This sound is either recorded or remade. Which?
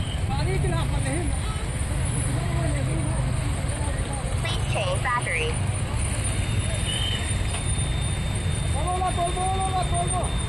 recorded